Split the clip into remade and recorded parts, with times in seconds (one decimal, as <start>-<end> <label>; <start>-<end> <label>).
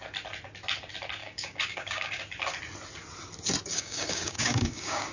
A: 0.0-1.2 recorded; 1.2-2.2 remade; 2.2-3.7 recorded; 3.7-5.1 remade